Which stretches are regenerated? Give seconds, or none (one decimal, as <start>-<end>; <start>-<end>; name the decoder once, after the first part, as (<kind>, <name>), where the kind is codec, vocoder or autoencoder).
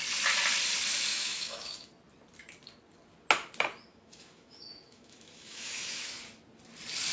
1.1-1.9 (autoencoder, DAC-VAE); 3.9-6.1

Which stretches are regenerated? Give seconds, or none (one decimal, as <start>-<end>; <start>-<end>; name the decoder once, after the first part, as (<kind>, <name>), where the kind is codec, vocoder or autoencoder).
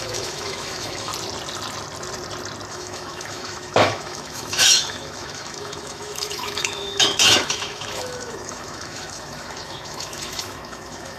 0.0-1.1 (autoencoder, DAC-VAE); 2.7-11.2